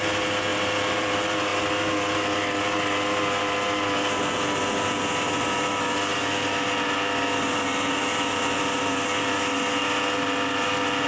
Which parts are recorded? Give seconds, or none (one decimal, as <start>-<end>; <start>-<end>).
0.0-11.1